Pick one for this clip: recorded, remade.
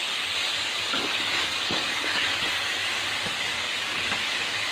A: remade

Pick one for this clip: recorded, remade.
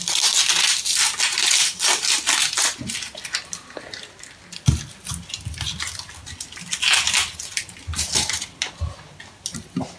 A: recorded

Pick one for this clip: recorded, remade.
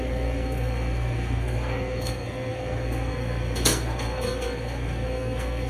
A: remade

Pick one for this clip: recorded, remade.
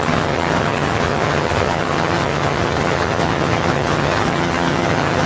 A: remade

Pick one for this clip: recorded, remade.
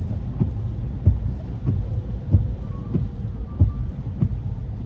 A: recorded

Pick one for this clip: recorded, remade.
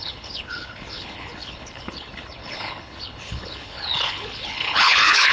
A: remade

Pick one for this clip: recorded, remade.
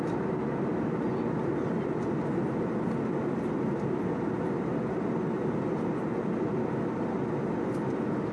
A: recorded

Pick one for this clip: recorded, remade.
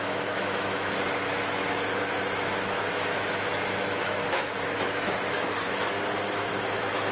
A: remade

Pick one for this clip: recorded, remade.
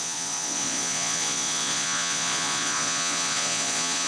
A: remade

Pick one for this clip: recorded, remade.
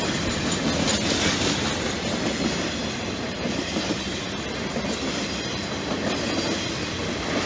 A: recorded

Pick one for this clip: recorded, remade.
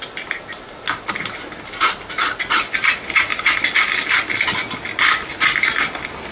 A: recorded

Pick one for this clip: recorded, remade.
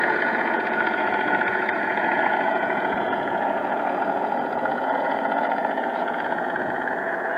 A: remade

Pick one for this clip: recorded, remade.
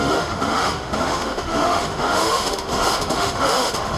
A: remade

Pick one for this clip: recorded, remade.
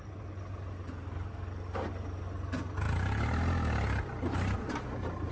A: recorded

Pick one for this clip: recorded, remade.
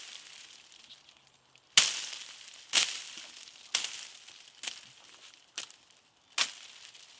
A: recorded